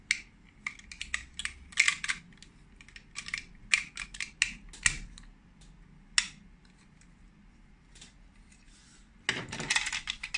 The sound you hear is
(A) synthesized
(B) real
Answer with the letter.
B